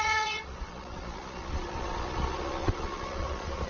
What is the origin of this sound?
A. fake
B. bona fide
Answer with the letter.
A